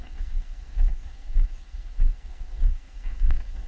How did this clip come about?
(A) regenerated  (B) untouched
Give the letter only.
A